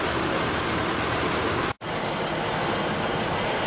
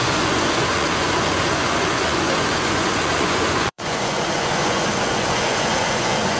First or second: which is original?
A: first